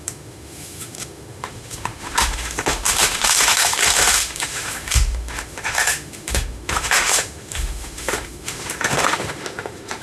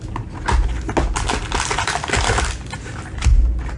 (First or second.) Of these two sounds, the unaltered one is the second